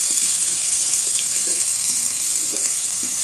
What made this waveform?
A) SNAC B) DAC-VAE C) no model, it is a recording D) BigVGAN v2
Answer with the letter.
A